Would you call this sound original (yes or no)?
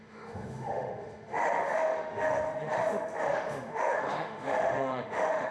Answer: no